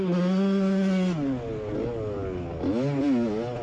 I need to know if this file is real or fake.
real